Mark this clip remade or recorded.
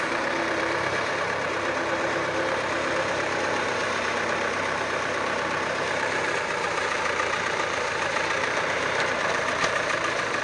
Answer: remade